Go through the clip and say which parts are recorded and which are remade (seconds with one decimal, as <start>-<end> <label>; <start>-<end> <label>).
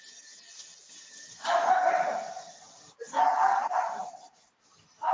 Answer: 0.0-5.1 recorded